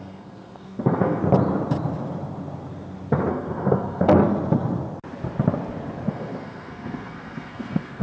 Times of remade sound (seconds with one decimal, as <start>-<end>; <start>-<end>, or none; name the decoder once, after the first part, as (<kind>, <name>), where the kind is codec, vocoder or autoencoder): 0.0-1.2 (codec, SNAC); 3.3-4.2; 6.1-8.0